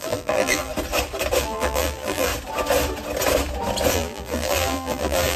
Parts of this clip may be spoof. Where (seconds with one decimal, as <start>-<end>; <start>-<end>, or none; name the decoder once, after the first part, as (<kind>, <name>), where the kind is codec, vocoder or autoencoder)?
0.0-0.7 (vocoder, BigVGAN v2); 1.4-2.3; 3.9-5.4